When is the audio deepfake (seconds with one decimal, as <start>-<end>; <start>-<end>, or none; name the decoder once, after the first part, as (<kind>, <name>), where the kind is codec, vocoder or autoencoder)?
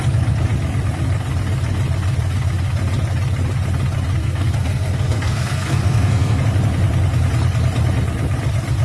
4.2-6.4 (codec, SNAC)